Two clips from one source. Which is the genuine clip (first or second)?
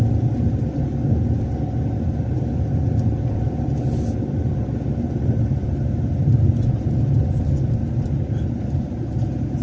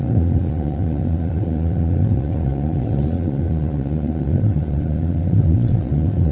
first